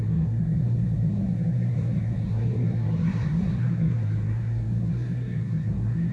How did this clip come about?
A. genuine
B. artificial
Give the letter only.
B